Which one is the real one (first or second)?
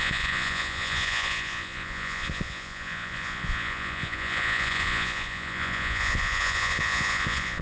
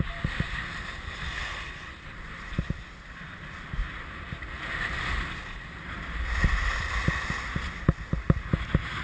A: second